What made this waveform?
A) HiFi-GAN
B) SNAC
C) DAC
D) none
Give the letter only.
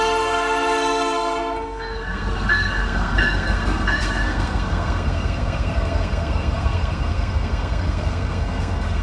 B